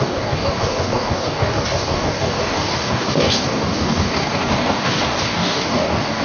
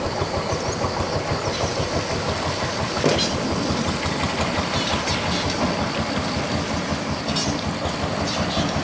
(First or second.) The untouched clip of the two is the second